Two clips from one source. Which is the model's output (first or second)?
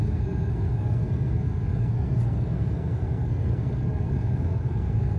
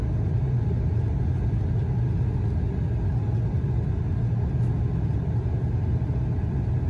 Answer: first